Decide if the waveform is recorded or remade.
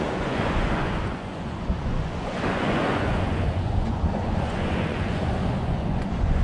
remade